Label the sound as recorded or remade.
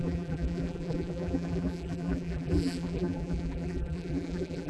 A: remade